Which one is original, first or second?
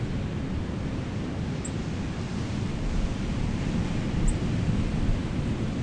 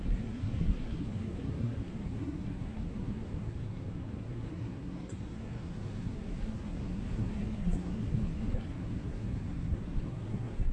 first